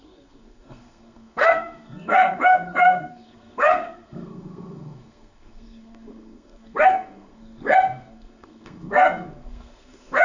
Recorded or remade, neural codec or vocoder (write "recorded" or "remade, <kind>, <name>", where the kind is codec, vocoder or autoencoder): remade, codec, SNAC